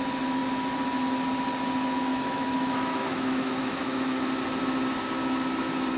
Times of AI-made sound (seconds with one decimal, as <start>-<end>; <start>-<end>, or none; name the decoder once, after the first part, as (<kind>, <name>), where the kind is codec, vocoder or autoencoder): 2.1-4.3 (autoencoder, DAC-VAE)